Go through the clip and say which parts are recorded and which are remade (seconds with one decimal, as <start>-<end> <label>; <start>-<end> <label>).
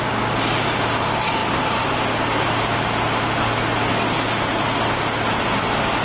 0.0-6.0 recorded